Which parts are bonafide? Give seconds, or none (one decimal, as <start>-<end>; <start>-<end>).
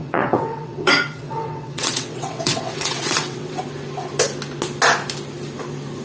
3.6-6.0